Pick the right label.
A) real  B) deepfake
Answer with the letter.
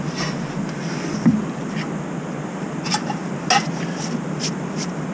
A